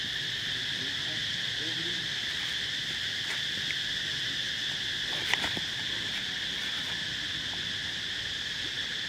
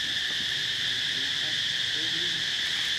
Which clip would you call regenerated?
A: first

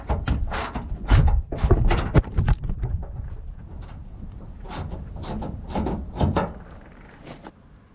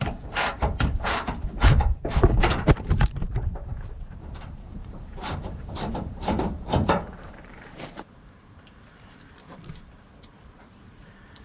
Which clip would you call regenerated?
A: second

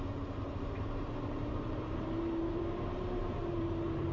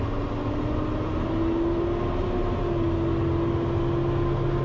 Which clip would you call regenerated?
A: first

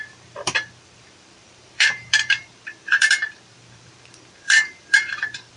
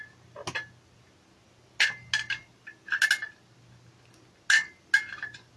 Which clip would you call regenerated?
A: first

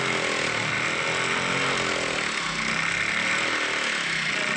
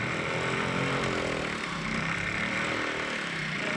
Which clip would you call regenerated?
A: second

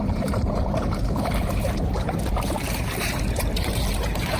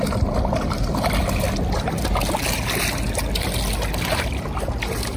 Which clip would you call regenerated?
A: first